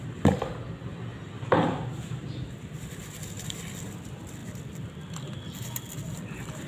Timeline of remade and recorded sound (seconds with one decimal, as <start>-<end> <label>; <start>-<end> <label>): 0.0-6.7 recorded